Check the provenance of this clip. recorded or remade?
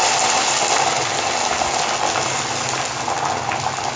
recorded